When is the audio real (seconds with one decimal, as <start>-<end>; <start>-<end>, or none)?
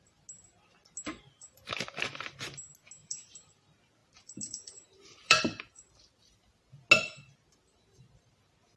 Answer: 0.0-1.1; 2.4-3.0; 3.5-4.0; 6.6-8.8